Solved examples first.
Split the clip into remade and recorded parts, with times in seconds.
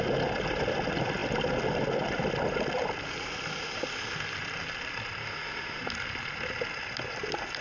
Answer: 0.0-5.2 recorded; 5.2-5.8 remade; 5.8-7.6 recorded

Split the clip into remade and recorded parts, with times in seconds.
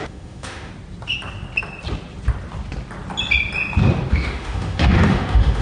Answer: 0.0-0.7 remade; 0.7-4.1 recorded; 4.1-5.6 remade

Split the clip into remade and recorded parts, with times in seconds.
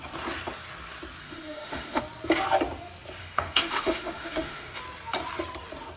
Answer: 0.0-1.2 recorded; 1.2-2.0 remade; 2.0-3.2 recorded; 3.2-4.8 remade; 4.8-6.0 recorded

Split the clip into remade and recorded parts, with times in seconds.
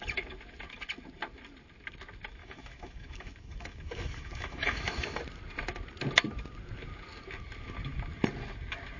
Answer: 0.0-2.4 recorded; 2.4-5.2 remade; 5.2-9.0 recorded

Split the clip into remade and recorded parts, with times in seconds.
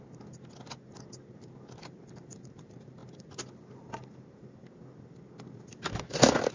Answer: 0.0-6.5 recorded